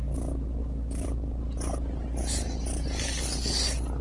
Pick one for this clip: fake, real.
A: real